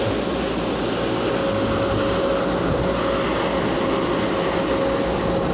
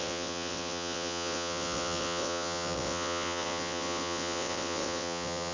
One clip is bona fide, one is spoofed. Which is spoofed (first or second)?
second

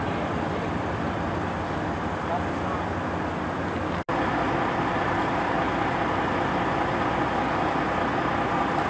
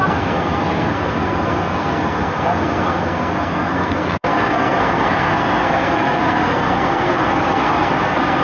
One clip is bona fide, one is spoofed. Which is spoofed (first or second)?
second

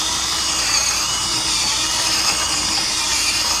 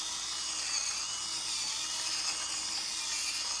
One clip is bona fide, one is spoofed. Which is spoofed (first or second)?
first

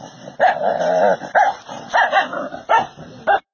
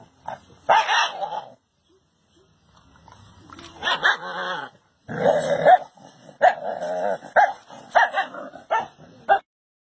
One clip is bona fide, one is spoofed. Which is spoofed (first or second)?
first